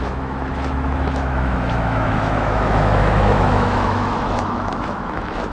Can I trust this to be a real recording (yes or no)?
no